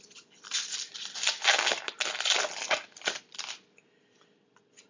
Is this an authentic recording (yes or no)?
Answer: yes